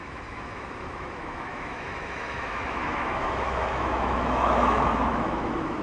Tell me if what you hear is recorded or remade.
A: remade